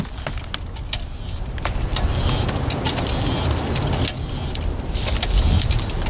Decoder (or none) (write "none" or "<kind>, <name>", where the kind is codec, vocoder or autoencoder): none